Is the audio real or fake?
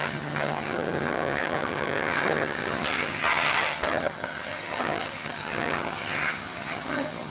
fake